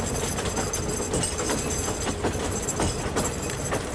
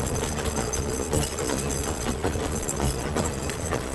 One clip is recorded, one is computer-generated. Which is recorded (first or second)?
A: first